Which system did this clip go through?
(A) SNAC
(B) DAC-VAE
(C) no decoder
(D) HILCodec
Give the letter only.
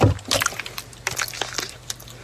C